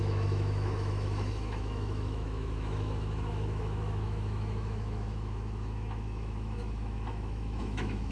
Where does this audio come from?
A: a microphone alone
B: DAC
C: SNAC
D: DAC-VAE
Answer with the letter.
D